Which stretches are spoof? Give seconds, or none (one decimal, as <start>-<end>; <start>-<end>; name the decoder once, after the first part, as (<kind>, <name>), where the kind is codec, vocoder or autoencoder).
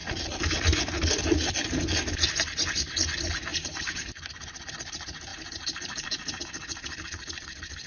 3.5-4.3 (vocoder, BigVGAN v2); 5.3-6.4